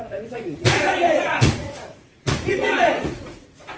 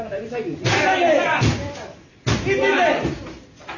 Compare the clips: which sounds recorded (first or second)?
second